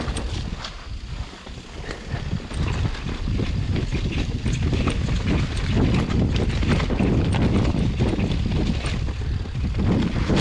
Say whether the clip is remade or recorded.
recorded